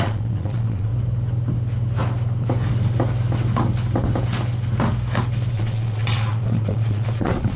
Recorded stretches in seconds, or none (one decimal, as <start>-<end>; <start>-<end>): 0.9-5.5